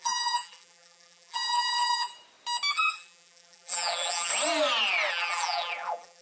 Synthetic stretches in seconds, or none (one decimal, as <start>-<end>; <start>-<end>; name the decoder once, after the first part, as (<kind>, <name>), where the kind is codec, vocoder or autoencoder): 0.0-2.1 (vocoder, BigVGAN v2); 2.7-4.3; 5.1-6.2

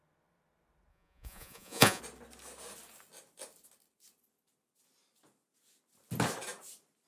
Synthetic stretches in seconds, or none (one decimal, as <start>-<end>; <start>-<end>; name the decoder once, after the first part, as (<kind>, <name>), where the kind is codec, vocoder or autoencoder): 0.9-2.0 (vocoder, Vocos)

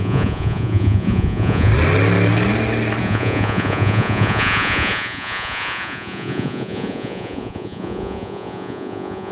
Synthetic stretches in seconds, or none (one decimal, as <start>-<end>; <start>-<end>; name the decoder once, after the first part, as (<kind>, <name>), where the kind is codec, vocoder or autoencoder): 0.0-1.7 (vocoder, Vocos); 3.0-9.3